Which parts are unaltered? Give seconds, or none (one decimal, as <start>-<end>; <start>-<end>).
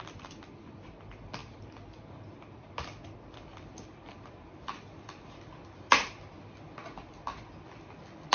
0.0-8.3